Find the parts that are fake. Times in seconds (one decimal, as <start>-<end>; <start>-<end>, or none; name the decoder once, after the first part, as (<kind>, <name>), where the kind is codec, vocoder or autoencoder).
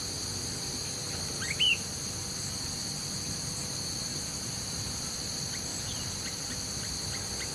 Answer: 2.2-3.0 (vocoder, BigVGAN v2); 4.1-5.3; 5.7-6.5